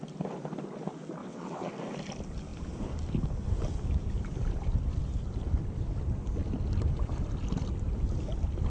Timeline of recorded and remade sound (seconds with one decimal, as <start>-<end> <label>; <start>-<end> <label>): 0.0-1.2 recorded; 1.2-1.7 remade; 1.7-8.7 recorded